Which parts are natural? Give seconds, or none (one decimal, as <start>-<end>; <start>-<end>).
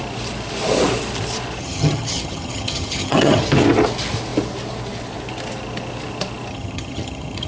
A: 0.0-1.6; 3.4-6.5